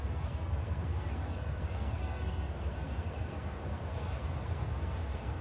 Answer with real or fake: fake